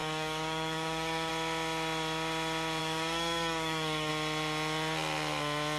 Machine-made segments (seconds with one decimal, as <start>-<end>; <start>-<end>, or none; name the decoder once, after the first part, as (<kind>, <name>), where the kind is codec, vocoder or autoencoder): 0.0-1.3 (codec, DAC); 2.8-4.1